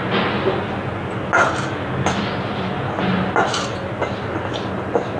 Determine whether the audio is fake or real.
real